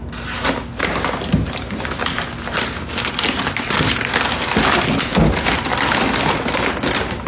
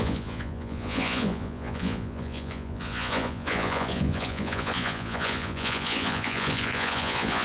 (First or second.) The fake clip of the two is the second